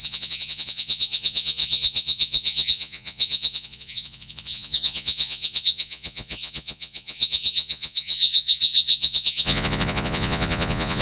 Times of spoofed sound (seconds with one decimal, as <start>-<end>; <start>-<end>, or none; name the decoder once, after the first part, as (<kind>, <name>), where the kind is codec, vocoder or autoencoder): 0.0-11.0 (vocoder, Vocos)